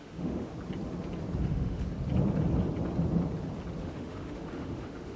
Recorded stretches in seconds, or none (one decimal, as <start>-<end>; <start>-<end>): 0.5-1.4; 1.8-3.8